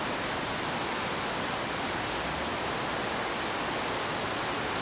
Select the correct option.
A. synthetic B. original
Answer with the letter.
B